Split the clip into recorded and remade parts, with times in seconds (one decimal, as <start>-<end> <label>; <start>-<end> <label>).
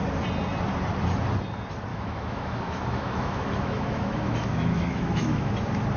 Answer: 0.0-1.9 recorded; 1.9-5.5 remade; 5.5-6.0 recorded